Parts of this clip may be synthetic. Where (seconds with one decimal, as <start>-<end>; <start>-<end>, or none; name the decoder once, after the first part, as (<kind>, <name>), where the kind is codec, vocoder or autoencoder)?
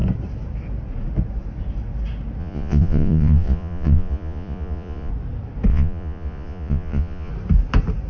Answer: 2.4-5.1 (vocoder, Vocos); 5.7-7.3